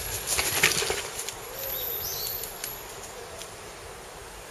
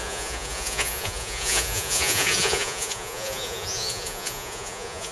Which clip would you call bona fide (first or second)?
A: first